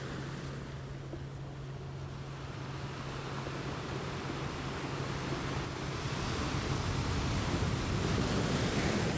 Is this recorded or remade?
recorded